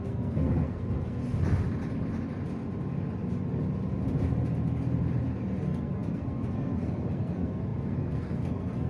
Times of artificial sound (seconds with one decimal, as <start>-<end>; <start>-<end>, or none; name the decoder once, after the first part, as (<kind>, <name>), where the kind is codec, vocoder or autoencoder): 0.0-1.2 (codec, SNAC); 5.6-8.9